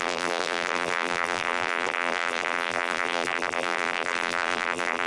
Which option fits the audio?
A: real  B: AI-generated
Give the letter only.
B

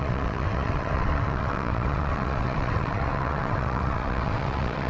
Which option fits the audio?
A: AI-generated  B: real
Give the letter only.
A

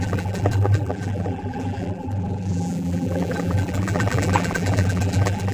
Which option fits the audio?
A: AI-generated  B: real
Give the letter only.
A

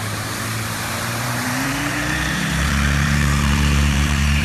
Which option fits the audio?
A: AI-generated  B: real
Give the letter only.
A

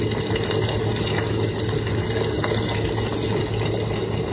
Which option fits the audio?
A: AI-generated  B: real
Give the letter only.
B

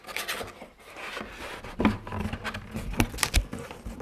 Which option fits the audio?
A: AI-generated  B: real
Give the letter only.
B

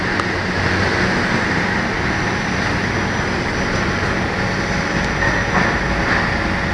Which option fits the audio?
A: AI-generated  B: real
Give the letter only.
B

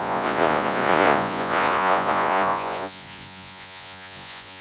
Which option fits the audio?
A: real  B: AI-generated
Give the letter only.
B